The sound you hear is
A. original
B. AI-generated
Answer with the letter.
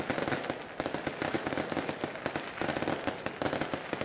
A